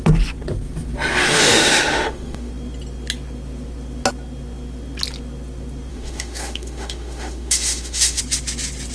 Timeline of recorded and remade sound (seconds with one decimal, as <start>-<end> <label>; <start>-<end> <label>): 0.0-1.2 recorded; 1.2-2.5 remade; 2.5-5.9 recorded; 5.9-8.2 remade; 8.2-8.9 recorded